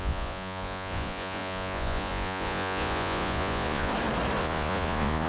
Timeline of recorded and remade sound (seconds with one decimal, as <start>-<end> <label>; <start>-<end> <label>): 0.0-3.9 remade; 3.9-4.4 recorded; 4.4-5.3 remade